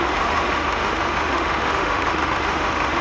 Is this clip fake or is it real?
fake